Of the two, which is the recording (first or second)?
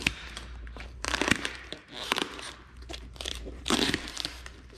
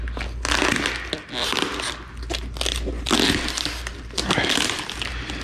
second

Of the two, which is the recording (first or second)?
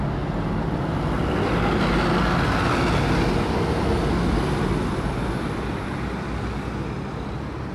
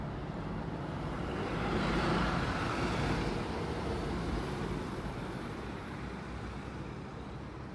first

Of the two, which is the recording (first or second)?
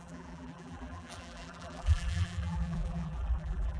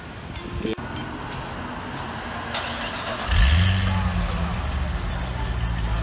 second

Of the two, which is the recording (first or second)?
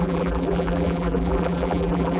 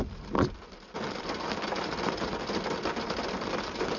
second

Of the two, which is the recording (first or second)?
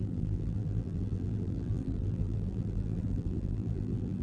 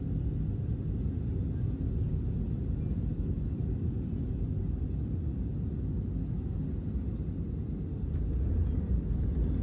second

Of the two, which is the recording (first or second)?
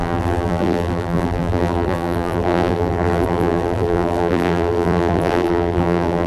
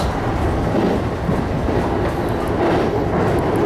second